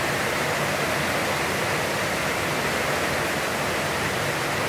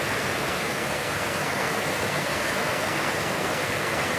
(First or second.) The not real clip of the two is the second